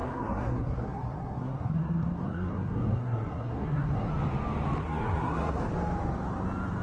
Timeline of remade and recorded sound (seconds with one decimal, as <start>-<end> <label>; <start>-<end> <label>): 0.0-4.1 remade; 4.1-4.8 recorded; 4.8-5.6 remade; 5.6-6.8 recorded